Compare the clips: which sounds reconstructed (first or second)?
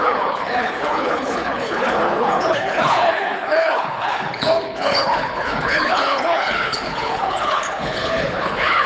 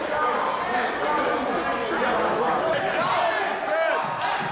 first